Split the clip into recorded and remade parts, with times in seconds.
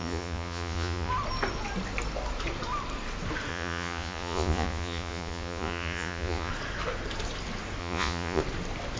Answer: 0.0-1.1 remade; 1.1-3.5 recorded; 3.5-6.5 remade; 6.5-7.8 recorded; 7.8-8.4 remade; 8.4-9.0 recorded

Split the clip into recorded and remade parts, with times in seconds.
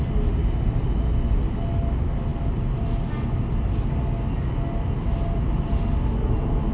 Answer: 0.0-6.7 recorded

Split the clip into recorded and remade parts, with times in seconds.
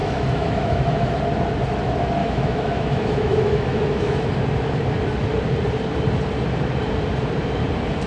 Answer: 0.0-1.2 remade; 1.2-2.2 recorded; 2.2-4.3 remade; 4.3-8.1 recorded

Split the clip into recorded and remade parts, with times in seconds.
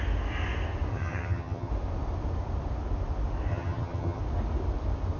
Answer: 0.0-0.9 recorded; 0.9-1.7 remade; 1.7-3.5 recorded; 3.5-4.2 remade; 4.2-5.2 recorded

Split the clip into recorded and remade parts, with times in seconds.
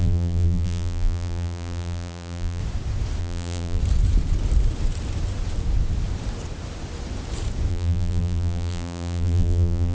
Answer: 0.0-2.6 remade; 2.6-3.2 recorded; 3.2-3.8 remade; 3.8-7.7 recorded; 7.7-9.9 remade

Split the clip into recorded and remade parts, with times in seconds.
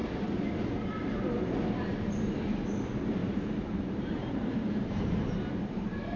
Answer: 0.0-3.2 recorded; 3.2-6.2 remade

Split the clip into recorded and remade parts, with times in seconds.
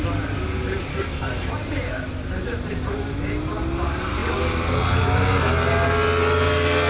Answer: 0.0-0.9 recorded; 0.9-1.5 remade; 1.5-6.9 recorded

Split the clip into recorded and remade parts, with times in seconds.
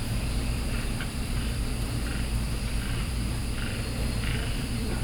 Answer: 0.0-2.1 remade; 2.1-3.0 recorded; 3.0-3.4 remade; 3.4-4.0 recorded; 4.0-5.0 remade